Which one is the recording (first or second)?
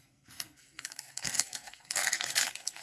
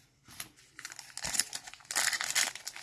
second